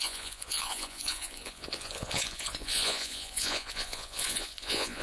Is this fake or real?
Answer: fake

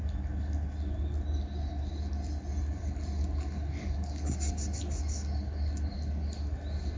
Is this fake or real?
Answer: real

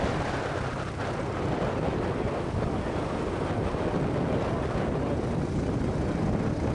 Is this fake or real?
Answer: real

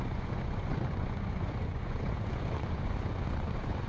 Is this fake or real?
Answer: fake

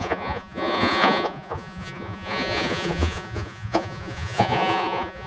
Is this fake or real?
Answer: fake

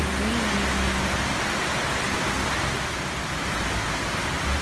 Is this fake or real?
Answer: real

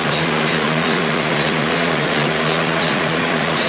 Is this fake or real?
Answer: fake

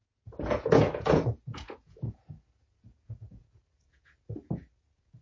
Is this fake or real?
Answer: fake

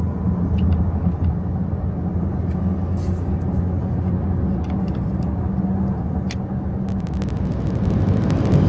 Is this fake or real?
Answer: real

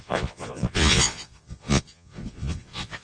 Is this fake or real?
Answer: fake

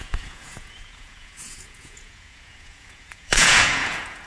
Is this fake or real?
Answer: fake